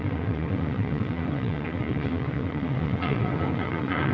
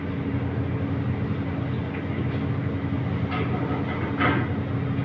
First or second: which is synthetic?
first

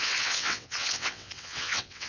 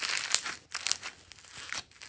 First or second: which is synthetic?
first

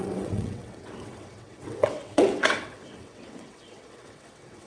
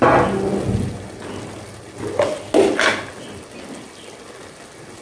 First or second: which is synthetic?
first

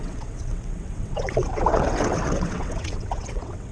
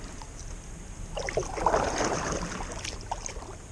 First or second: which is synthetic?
first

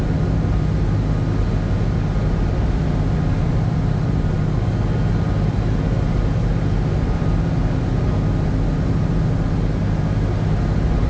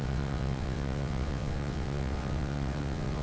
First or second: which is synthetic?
second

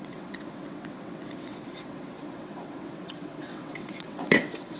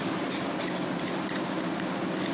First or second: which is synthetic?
first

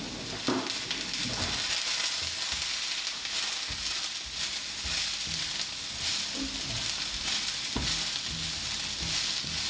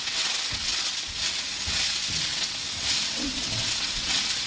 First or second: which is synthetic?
second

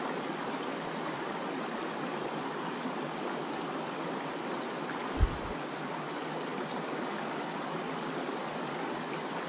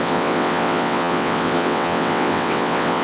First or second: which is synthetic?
second